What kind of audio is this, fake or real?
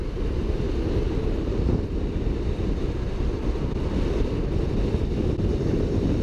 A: real